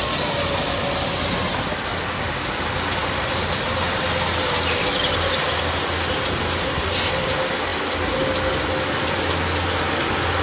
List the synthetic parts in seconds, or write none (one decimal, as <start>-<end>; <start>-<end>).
none